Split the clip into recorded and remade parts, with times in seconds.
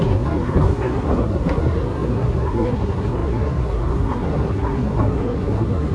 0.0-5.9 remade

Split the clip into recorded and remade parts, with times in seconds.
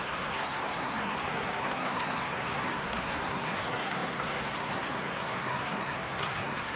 0.0-6.8 remade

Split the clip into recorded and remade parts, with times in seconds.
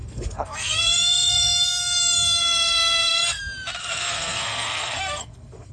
0.0-3.4 remade; 3.4-3.8 recorded; 3.8-5.7 remade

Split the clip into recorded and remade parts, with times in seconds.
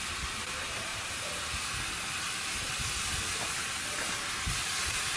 0.0-5.2 recorded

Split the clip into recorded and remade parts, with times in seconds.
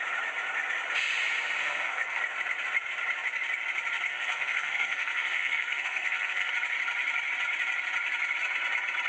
0.0-1.6 recorded; 1.6-2.2 remade; 2.2-4.1 recorded; 4.1-6.5 remade; 6.5-9.1 recorded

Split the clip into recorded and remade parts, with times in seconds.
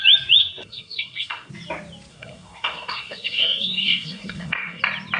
0.0-0.4 recorded; 0.4-1.5 remade; 1.5-2.1 recorded; 2.1-4.8 remade; 4.8-5.2 recorded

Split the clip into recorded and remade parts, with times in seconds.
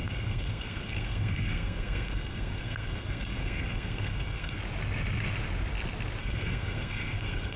0.0-4.6 remade; 4.6-6.2 recorded; 6.2-7.6 remade